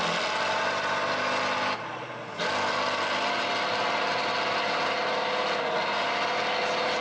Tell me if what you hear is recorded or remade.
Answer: recorded